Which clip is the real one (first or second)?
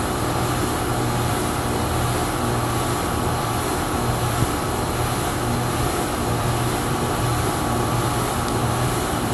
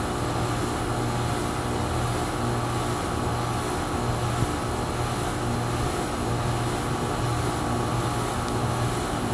second